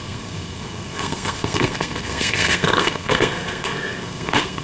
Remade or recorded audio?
remade